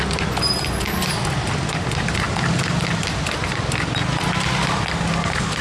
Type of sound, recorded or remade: recorded